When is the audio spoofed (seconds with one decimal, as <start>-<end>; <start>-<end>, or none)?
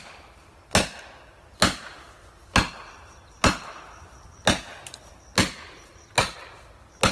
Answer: none